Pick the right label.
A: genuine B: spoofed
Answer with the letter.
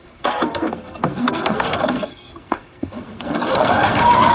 B